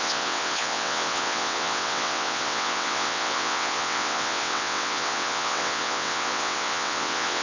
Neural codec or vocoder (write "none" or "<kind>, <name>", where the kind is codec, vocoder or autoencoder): vocoder, WaveNeXt